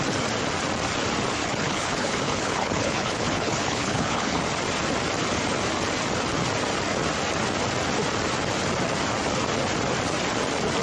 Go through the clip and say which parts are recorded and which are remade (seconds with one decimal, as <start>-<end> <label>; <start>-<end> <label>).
0.0-1.4 recorded; 1.4-4.4 remade; 4.4-10.8 recorded